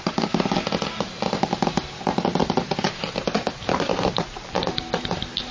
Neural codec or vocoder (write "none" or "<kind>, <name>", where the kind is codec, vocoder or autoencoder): vocoder, BigVGAN v2